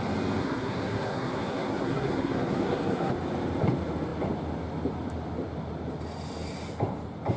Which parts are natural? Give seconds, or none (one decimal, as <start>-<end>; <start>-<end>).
0.0-0.4; 3.1-7.4